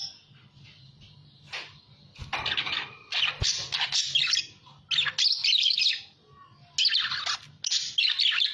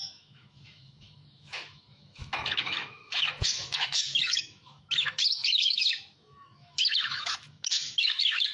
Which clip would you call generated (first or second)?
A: second